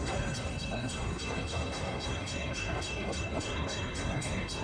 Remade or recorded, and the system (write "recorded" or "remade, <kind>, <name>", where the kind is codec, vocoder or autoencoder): remade, codec, SNAC